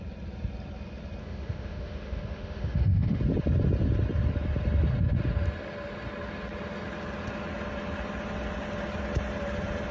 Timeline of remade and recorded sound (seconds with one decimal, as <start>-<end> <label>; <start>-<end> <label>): 0.0-1.2 recorded; 1.2-3.2 remade; 3.2-9.9 recorded